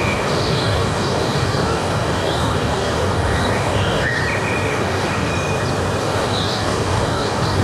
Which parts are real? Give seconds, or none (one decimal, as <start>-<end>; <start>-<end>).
4.2-4.7; 5.3-6.0